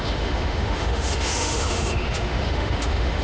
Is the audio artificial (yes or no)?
yes